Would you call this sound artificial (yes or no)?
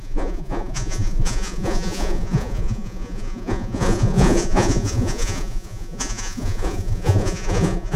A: yes